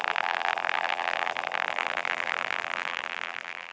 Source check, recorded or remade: remade